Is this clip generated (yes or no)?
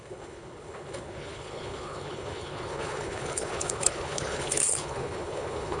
yes